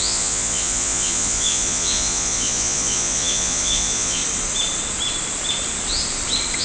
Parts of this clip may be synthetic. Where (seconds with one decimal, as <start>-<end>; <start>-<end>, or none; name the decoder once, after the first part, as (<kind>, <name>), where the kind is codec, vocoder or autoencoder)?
0.0-4.2 (vocoder, Vocos)